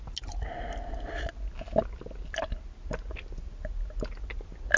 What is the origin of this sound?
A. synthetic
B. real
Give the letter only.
B